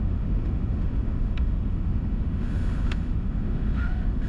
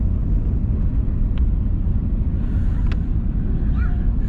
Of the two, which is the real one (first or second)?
second